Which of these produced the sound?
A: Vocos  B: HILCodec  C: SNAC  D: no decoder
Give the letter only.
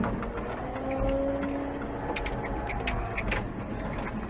D